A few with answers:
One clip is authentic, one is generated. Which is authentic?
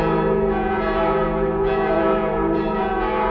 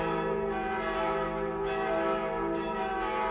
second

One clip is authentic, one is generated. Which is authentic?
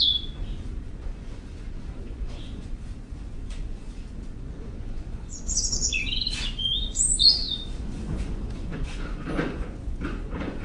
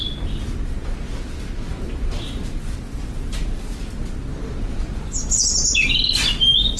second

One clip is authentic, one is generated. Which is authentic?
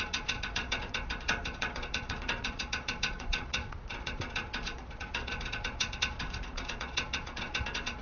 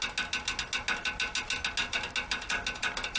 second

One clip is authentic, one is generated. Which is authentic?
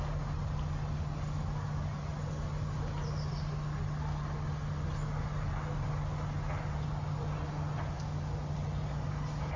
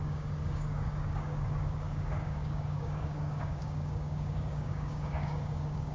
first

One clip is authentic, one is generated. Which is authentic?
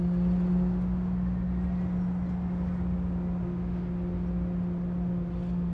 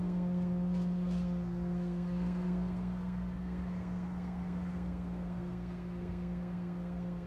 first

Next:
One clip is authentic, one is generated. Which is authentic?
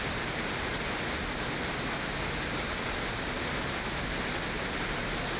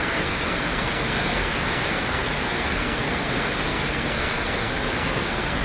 first